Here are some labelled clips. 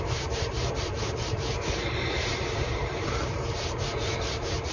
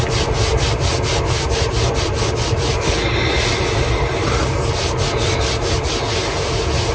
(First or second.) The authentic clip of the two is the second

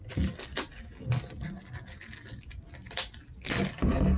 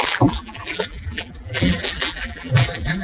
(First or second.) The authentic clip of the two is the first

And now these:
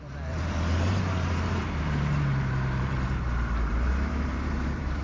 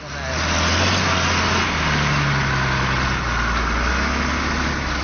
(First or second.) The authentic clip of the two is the second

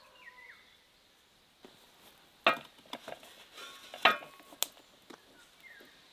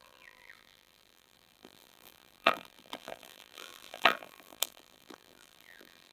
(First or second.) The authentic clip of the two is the first